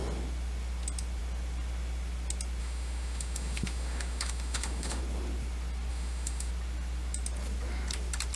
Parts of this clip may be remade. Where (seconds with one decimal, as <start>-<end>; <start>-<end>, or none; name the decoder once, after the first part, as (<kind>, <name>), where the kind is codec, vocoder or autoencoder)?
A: 2.6-5.0 (autoencoder, DAC-VAE); 5.9-6.5